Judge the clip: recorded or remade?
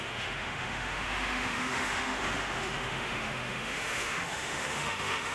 remade